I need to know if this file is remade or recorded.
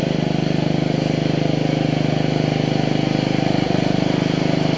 recorded